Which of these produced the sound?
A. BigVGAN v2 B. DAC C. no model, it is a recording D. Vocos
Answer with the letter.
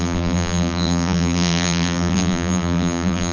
A